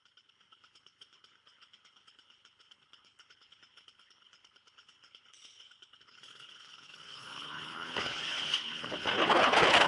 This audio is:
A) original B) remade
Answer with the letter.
B